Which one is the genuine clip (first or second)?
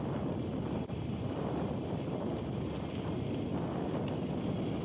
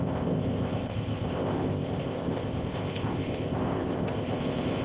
first